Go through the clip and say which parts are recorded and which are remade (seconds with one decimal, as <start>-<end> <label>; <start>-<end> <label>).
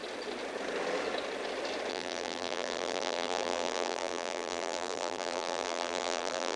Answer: 0.0-1.9 recorded; 1.9-6.6 remade